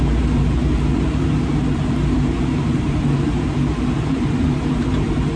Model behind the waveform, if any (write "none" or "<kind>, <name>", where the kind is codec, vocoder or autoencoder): vocoder, BigVGAN v2